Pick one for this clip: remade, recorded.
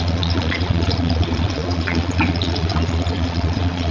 remade